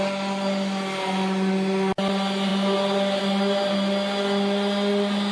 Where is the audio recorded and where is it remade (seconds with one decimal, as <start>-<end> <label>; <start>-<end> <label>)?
0.0-5.3 recorded